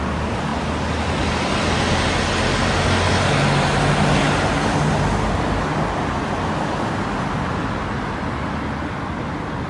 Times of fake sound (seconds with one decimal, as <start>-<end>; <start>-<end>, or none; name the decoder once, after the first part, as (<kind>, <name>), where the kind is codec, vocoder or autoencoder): none